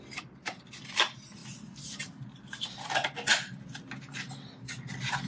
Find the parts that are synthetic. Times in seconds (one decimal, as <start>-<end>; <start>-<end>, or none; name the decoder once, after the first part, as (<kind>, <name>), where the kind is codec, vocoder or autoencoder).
none